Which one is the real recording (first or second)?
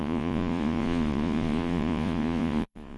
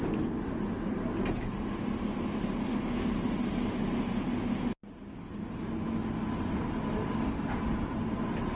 second